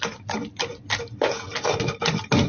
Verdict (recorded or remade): recorded